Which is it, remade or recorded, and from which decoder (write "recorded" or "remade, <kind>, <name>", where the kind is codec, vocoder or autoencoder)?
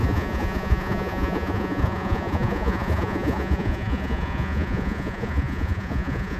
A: remade, vocoder, Vocos